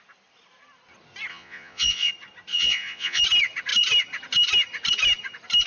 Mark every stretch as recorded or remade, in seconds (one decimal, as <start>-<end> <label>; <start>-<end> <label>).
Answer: 0.0-1.3 recorded; 1.3-2.1 remade; 2.1-2.5 recorded; 2.5-3.2 remade; 3.2-5.7 recorded